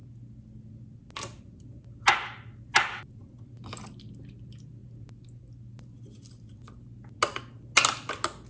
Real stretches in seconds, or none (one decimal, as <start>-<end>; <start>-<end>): 0.0-8.5